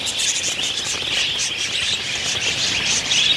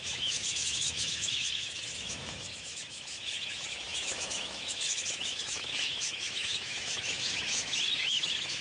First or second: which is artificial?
second